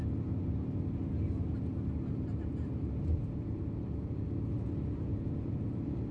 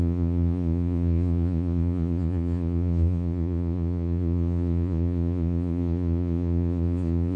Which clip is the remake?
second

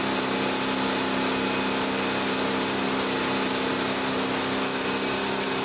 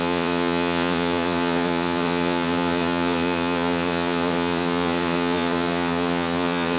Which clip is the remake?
second